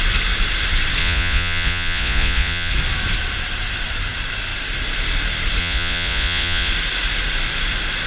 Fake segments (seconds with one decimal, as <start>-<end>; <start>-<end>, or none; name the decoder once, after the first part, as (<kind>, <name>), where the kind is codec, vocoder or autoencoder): 1.0-2.7 (vocoder, Vocos); 5.6-6.7